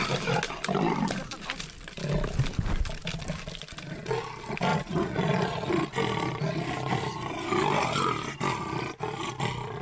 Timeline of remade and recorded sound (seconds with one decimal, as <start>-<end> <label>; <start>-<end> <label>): 0.0-4.7 recorded; 4.7-5.7 remade; 5.7-9.8 recorded